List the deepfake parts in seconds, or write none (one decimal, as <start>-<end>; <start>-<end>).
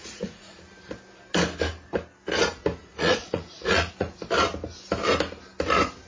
0.0-0.6; 2.8-4.2